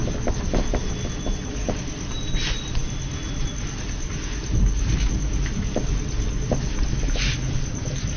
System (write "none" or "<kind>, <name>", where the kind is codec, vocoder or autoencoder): vocoder, BigVGAN v2